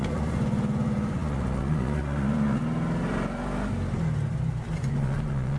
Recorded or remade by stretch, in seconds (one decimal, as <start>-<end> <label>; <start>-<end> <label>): 0.0-2.6 remade; 2.6-4.8 recorded; 4.8-5.6 remade